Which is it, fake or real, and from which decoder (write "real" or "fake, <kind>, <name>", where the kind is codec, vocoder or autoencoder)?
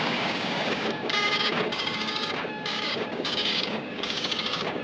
fake, codec, DAC